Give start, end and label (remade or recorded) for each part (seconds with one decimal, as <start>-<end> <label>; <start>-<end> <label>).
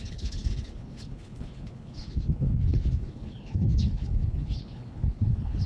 0.0-5.7 remade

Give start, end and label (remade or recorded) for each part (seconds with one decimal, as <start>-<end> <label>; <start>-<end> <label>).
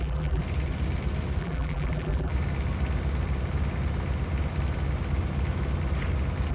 0.0-0.4 remade; 0.4-1.4 recorded; 1.4-2.3 remade; 2.3-6.5 recorded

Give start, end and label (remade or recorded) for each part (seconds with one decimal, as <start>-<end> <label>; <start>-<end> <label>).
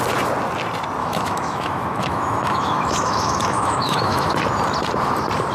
0.0-1.0 recorded; 1.0-4.3 remade; 4.3-5.5 recorded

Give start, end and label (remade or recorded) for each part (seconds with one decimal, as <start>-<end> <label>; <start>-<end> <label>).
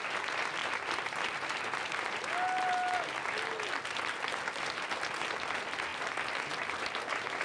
0.0-7.4 recorded